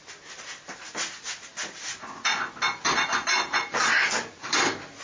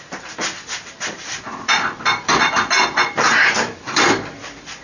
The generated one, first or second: second